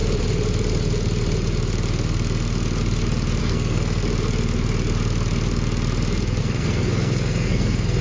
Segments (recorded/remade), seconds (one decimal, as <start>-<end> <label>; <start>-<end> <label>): 0.0-3.4 recorded; 3.4-4.0 remade; 4.0-6.4 recorded; 6.4-8.0 remade